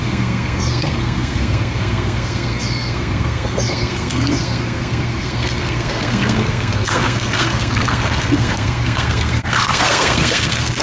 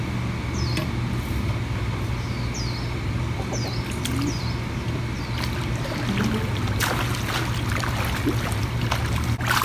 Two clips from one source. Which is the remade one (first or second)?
first